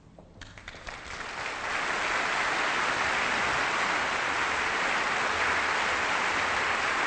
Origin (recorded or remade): recorded